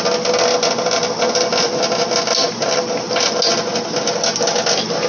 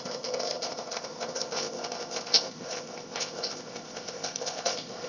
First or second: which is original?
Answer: first